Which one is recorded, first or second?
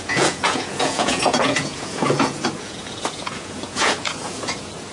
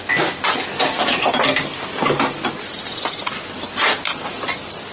second